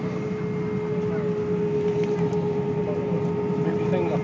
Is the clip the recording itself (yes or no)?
yes